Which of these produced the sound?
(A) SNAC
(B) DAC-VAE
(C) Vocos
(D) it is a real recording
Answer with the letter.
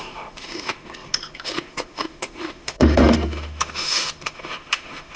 B